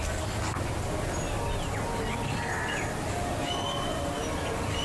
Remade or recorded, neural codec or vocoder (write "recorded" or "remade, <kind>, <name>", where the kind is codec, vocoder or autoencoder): recorded